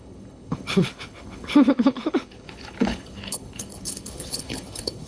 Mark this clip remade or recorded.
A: remade